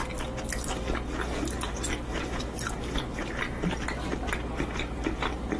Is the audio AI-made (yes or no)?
no